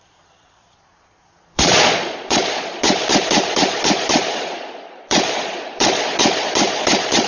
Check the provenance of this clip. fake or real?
fake